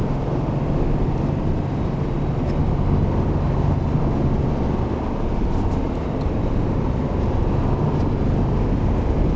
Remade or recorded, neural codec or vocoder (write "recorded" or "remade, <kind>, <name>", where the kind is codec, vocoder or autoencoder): recorded